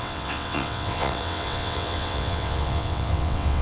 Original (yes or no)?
no